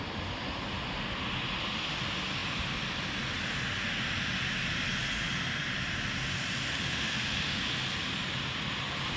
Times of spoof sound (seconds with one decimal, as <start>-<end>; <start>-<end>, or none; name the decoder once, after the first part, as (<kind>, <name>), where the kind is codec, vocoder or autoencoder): 6.7-7.6 (autoencoder, DAC-VAE)